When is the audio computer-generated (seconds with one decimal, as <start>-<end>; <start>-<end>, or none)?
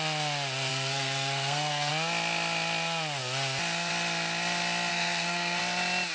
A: 0.7-1.9; 4.9-5.6